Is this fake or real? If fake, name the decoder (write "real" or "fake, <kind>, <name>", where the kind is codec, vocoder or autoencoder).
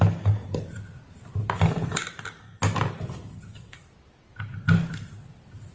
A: real